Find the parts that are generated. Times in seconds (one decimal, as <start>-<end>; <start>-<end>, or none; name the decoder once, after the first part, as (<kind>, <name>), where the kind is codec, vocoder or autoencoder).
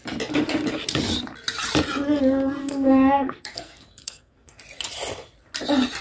2.6-4.6 (codec, SNAC)